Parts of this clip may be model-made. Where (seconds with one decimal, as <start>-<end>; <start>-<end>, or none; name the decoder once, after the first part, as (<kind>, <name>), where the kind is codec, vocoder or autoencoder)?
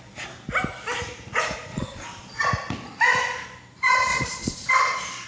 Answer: 1.7-2.4 (vocoder, Vocos); 4.1-4.7